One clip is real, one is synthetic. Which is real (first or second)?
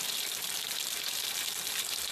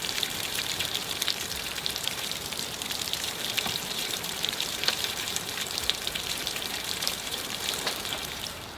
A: first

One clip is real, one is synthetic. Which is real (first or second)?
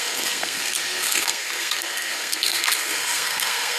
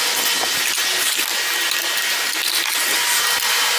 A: second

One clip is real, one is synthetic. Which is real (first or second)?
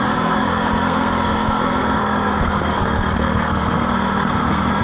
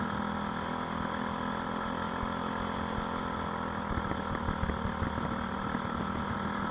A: second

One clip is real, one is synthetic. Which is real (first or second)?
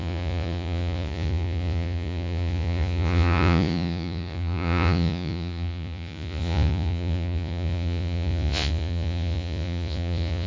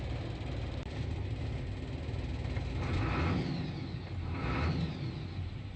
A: second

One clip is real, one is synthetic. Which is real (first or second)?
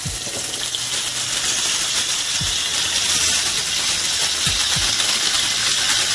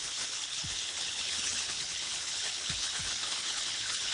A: first